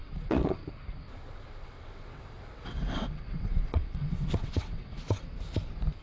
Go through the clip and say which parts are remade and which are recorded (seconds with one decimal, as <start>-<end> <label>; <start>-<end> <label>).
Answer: 0.0-0.6 remade; 0.6-1.6 recorded; 1.6-5.2 remade; 5.2-6.0 recorded